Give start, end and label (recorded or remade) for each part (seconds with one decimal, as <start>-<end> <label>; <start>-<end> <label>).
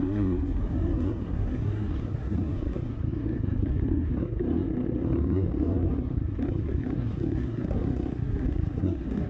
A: 0.0-9.3 remade